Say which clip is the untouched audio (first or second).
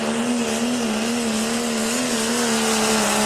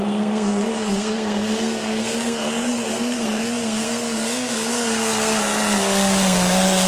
first